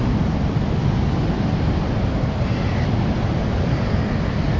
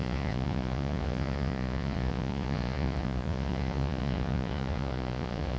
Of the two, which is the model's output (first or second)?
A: second